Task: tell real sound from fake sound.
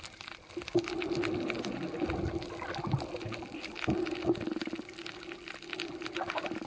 real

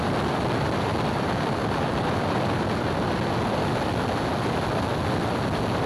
real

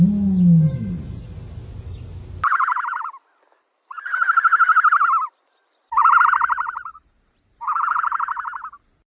real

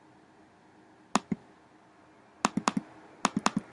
real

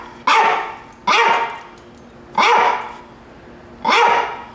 real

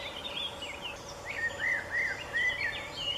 real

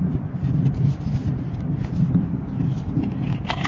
real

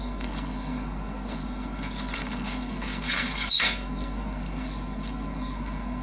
fake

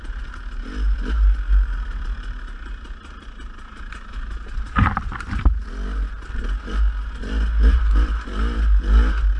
real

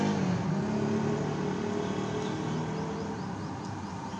real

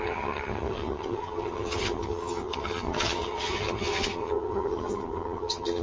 fake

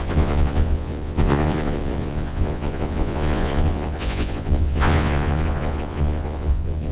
fake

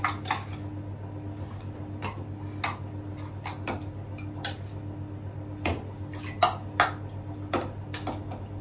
real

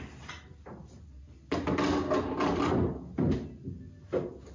real